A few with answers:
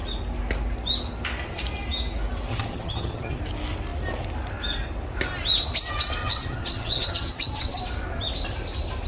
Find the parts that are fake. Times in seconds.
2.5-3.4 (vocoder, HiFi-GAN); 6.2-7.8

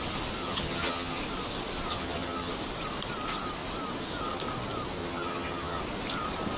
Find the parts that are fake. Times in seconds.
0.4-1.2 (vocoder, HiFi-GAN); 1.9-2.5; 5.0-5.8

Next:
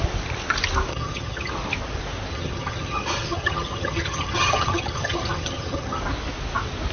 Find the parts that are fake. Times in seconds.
0.9-1.5 (vocoder, HiFi-GAN); 2.3-6.0

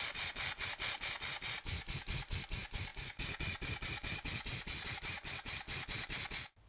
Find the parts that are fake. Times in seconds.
none

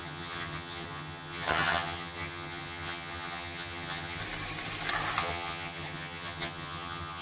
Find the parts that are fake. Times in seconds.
0.0-4.2 (vocoder, HiFi-GAN); 5.2-7.2

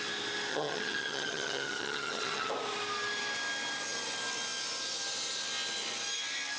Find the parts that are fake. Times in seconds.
0.5-2.5 (vocoder, HiFi-GAN)

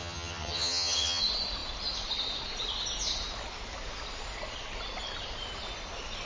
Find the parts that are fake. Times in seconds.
0.0-1.2 (vocoder, HiFi-GAN)

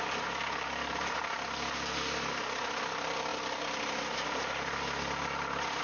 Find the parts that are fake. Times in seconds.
none